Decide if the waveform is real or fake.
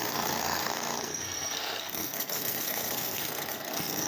fake